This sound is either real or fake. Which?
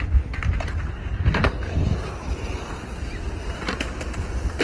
real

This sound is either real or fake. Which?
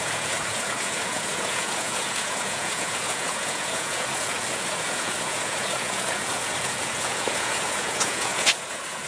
fake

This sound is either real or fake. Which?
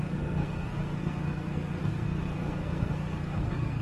fake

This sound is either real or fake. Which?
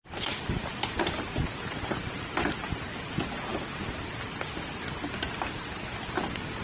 real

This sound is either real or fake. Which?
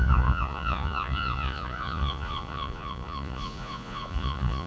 fake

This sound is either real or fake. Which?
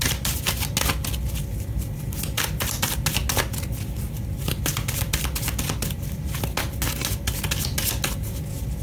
real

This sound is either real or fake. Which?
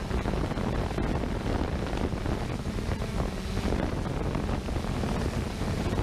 real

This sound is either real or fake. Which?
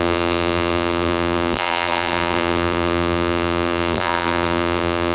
fake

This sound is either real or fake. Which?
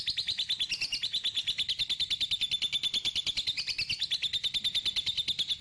real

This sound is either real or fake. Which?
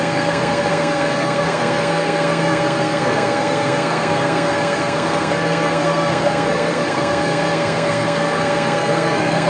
fake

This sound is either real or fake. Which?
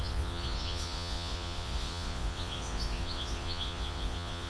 fake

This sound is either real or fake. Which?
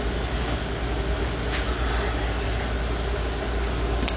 real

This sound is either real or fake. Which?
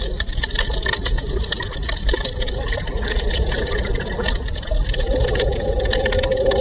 real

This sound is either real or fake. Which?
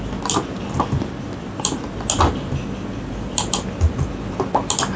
real